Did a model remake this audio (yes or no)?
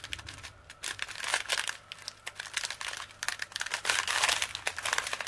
no